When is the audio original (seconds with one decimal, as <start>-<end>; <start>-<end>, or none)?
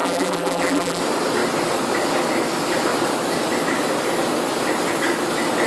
1.0-5.7